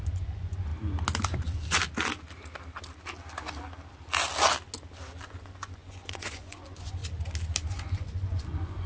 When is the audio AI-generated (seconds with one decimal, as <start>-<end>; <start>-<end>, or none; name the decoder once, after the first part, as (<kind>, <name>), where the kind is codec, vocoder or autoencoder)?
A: 0.0-0.7 (vocoder, Vocos); 5.2-7.0; 7.7-8.9